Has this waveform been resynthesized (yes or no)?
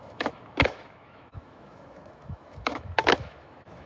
yes